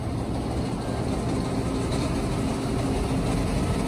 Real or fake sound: real